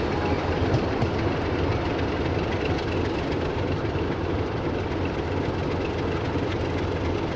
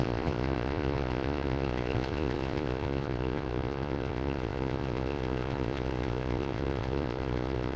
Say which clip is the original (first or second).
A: first